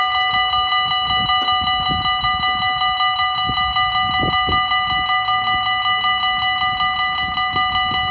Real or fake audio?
real